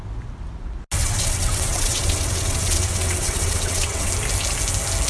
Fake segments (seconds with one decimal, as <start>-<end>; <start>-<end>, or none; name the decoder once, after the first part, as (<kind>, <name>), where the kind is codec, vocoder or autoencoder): 1.0-4.1 (vocoder, WaveNeXt)